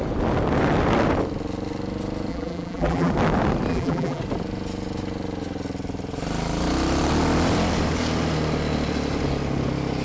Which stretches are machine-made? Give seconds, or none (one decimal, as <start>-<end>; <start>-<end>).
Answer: 2.3-3.1; 3.7-4.2